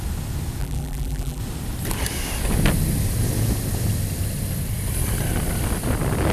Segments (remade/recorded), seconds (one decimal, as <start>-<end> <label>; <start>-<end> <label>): 0.0-0.6 recorded; 0.6-1.4 remade; 1.4-6.3 recorded